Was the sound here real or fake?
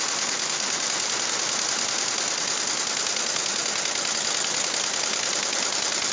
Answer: real